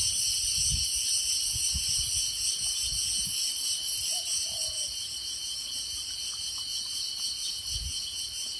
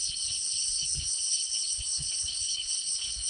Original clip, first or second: first